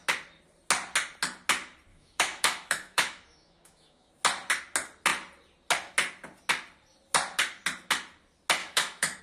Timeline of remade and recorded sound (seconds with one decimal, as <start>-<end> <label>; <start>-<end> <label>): 0.0-1.9 recorded; 1.9-4.1 remade; 4.1-8.6 recorded; 8.6-9.2 remade